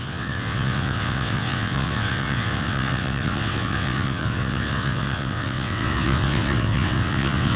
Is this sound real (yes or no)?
no